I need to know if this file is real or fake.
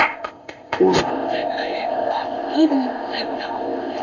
fake